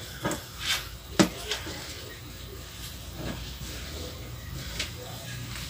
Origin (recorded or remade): recorded